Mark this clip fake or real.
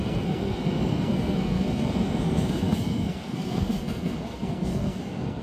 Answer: fake